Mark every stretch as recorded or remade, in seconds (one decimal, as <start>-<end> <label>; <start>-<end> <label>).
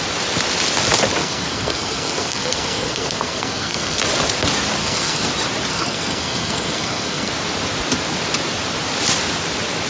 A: 0.0-1.2 recorded; 1.2-4.0 remade; 4.0-4.8 recorded; 4.8-5.3 remade; 5.3-5.7 recorded; 5.7-7.3 remade; 7.3-9.9 recorded